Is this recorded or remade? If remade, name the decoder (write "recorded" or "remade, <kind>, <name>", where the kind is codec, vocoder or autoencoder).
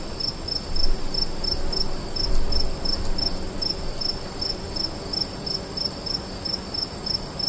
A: recorded